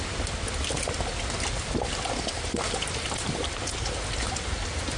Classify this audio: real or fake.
real